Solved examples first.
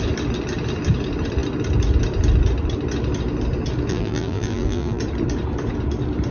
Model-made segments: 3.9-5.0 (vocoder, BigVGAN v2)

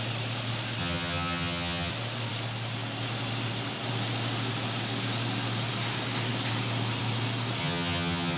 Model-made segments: 0.8-1.9 (vocoder, HiFi-GAN); 7.6-8.4

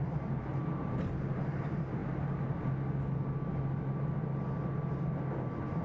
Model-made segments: 0.5-1.6 (vocoder, BigVGAN v2)

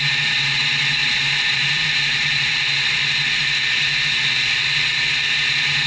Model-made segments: 1.0-2.5 (vocoder, BigVGAN v2)